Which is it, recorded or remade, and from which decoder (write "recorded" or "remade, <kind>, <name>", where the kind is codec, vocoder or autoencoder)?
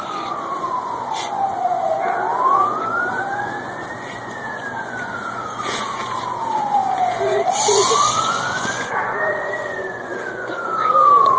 remade, vocoder, Vocos